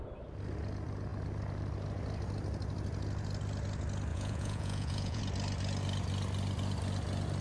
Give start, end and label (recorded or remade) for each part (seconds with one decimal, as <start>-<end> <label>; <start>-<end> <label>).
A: 0.0-4.1 recorded; 4.1-5.2 remade; 5.2-7.4 recorded